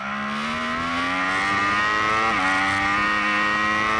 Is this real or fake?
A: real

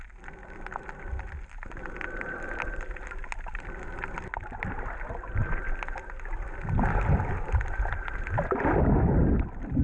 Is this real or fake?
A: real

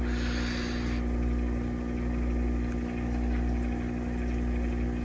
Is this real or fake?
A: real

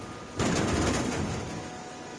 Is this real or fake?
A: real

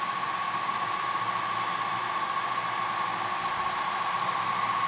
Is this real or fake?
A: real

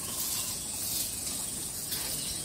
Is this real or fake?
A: fake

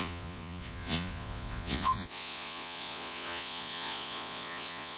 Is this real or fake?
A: fake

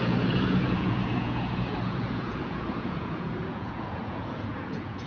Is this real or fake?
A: fake